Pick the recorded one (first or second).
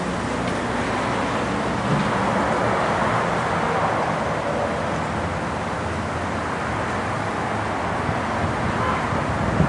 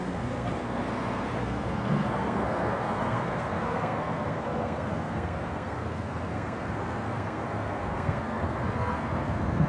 first